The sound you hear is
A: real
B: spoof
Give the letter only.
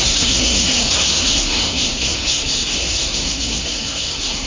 B